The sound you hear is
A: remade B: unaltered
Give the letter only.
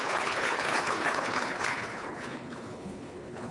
A